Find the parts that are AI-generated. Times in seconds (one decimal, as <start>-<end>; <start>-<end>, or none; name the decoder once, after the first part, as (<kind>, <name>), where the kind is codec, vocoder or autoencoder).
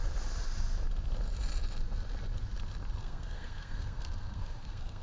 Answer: 3.0-5.0 (codec, SNAC)